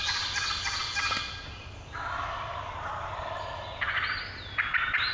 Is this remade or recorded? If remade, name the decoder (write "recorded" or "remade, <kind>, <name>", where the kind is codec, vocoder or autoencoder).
recorded